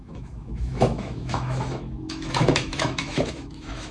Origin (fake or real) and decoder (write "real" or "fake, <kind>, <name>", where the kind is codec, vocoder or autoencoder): fake, autoencoder, DAC-VAE